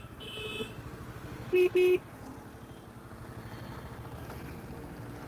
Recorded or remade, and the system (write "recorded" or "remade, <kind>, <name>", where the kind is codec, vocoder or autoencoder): recorded